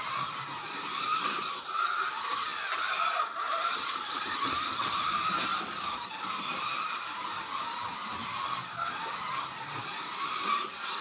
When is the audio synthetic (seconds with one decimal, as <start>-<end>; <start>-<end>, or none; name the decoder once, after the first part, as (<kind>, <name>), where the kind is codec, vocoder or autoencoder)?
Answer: 0.0-2.5 (vocoder, BigVGAN v2); 3.1-5.5; 9.3-11.0